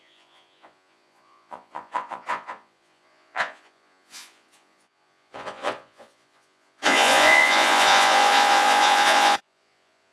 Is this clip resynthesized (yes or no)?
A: yes